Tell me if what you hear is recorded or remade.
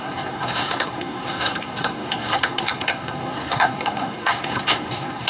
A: remade